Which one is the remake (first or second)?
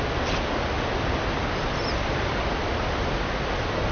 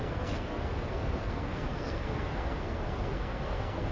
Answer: second